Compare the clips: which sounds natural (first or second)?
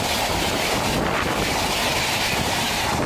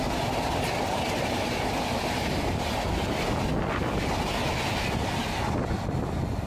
second